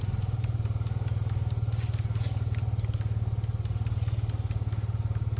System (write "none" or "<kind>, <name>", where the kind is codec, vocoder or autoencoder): none